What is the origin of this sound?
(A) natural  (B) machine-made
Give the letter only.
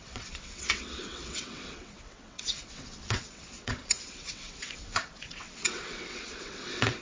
B